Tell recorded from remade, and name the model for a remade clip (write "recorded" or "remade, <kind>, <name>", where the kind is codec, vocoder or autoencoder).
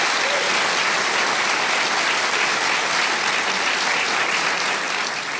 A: recorded